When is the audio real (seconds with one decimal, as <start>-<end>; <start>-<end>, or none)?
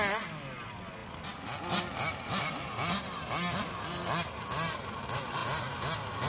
0.0-6.3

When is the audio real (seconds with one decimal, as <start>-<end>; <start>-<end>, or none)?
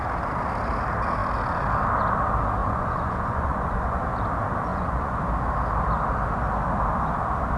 0.0-2.6; 4.0-4.7; 5.2-7.6